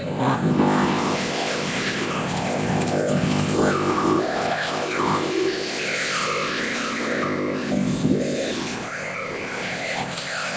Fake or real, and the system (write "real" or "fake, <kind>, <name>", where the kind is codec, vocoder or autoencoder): fake, codec, ZipCodec